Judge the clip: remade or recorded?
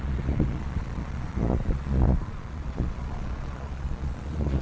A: remade